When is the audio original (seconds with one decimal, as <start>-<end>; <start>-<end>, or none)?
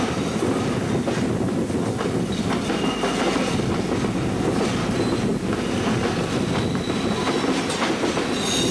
0.0-8.7